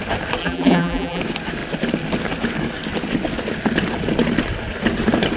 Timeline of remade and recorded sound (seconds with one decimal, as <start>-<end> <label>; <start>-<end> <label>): 0.0-0.4 recorded; 0.4-1.2 remade; 1.2-5.4 recorded